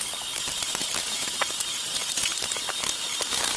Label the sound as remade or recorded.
remade